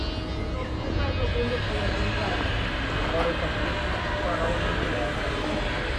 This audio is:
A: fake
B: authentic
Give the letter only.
B